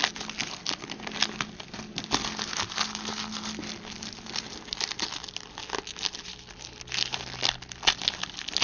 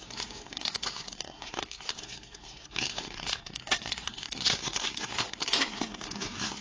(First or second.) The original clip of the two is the first